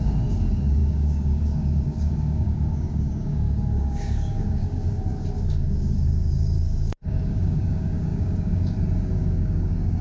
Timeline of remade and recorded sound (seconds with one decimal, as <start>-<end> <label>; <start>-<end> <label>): 0.0-10.0 remade